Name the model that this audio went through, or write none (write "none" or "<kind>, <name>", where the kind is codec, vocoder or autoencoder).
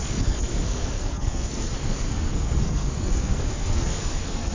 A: codec, SNAC